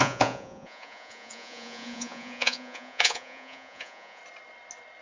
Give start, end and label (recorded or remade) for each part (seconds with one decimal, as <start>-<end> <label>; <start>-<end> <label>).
0.0-4.2 remade; 4.2-5.0 recorded